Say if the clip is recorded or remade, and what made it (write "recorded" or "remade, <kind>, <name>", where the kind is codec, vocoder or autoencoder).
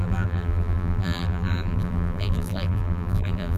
remade, vocoder, BigVGAN v2